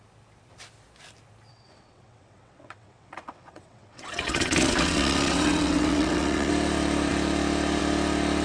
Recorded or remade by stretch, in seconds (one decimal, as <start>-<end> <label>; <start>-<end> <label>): 0.0-1.5 recorded; 1.5-6.5 remade; 6.5-8.4 recorded